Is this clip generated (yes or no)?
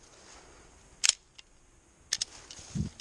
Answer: no